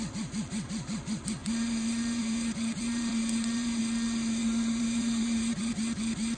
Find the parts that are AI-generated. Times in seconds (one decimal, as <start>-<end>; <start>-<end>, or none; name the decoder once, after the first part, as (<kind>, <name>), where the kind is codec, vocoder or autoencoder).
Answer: 1.4-3.8 (vocoder, BigVGAN v2); 4.4-5.7